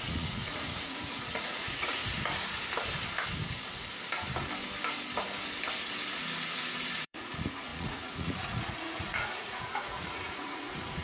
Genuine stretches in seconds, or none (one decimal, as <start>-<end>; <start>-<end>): 2.0-7.0